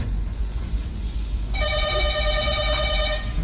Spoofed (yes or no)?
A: yes